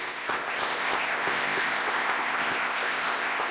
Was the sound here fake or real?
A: fake